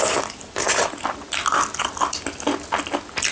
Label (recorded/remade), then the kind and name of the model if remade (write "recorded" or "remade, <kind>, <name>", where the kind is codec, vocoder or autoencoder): recorded